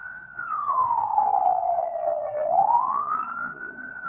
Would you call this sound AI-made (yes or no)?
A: yes